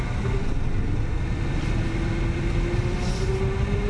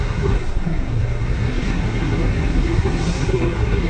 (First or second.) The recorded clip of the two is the first